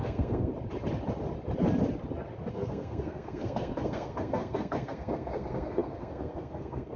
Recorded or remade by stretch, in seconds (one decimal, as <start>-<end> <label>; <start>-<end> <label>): 0.0-0.5 remade; 0.5-2.5 recorded; 2.5-7.0 remade